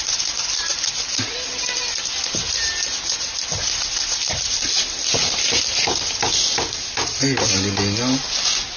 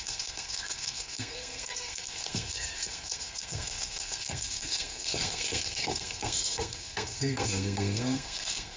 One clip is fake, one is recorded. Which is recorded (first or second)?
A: first